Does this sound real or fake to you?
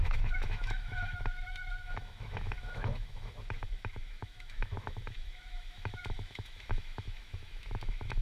fake